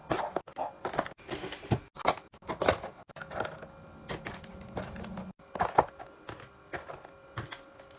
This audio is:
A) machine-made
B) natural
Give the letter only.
B